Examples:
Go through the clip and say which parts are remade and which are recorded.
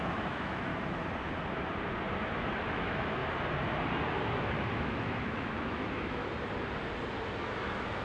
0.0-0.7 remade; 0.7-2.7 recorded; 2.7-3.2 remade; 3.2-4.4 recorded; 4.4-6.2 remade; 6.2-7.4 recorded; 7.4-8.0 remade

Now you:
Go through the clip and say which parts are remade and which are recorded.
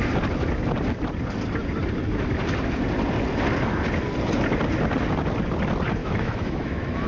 0.0-6.0 recorded; 6.0-7.1 remade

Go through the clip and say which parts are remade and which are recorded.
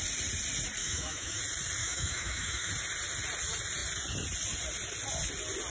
0.0-0.8 recorded; 0.8-1.4 remade; 1.4-1.8 recorded; 1.8-2.7 remade; 2.7-5.7 recorded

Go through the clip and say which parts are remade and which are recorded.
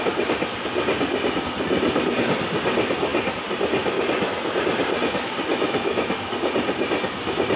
0.0-5.5 recorded; 5.5-6.3 remade; 6.3-7.6 recorded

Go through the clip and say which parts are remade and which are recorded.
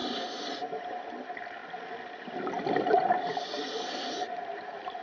0.0-5.0 recorded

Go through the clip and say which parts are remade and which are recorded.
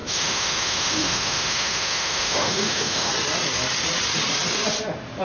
0.0-3.1 remade; 3.1-5.2 recorded